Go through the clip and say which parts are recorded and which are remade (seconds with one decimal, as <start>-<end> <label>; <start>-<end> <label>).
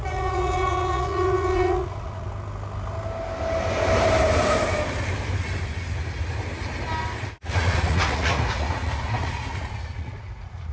0.0-2.3 remade; 2.3-7.2 recorded; 7.2-10.7 remade